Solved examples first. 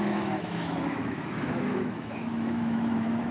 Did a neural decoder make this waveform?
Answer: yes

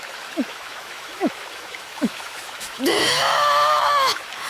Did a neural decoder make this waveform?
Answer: yes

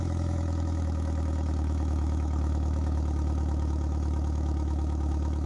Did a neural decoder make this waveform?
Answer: yes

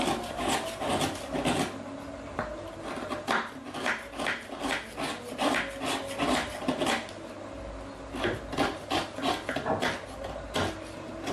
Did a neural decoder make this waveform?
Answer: no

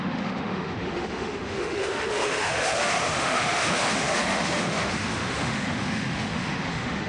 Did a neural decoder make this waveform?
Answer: yes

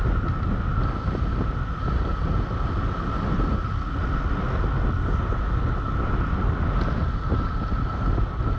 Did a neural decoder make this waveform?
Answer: no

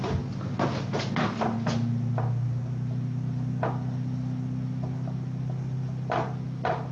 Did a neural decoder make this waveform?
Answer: no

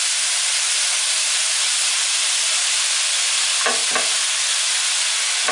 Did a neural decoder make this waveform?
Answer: no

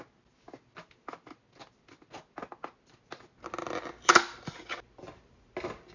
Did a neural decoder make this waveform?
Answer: no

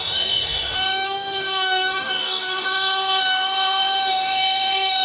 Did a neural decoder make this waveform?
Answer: yes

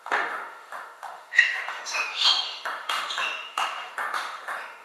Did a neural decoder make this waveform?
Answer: yes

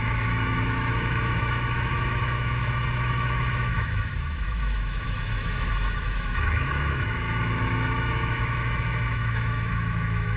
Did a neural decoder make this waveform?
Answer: yes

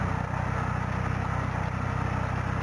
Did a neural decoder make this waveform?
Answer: no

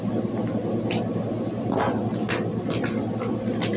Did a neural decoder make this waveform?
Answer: no